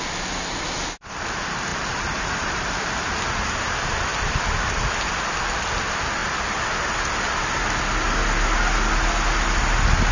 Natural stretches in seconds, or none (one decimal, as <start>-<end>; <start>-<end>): 0.0-1.7; 2.7-10.1